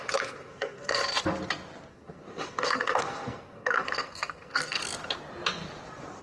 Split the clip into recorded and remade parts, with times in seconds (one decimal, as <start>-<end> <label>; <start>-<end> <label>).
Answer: 0.0-1.0 remade; 1.0-1.9 recorded; 1.9-4.8 remade; 4.8-6.2 recorded